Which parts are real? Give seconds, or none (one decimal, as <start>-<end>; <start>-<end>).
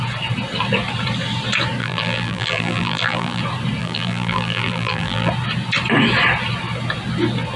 0.0-1.8; 3.4-3.8; 5.3-7.6